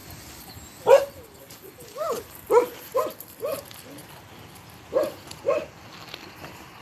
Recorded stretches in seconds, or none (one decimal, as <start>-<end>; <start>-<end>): 0.0-6.8